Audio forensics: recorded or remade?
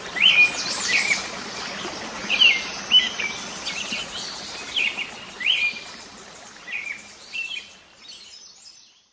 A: recorded